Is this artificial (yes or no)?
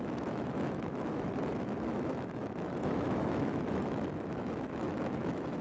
yes